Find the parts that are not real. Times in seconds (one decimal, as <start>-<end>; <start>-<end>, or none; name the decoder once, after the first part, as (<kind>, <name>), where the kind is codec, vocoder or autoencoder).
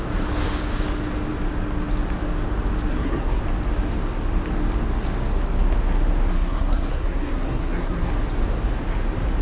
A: 2.9-3.4 (codec, SNAC); 6.3-8.1